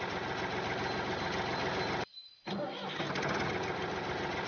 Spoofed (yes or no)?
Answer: no